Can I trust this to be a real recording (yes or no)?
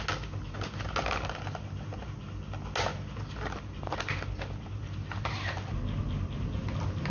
yes